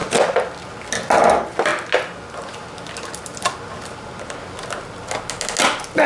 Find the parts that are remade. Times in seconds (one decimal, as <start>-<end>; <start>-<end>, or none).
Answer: none